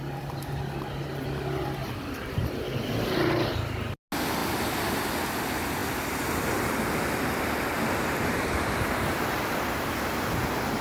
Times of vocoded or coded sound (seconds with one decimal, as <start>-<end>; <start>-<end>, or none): none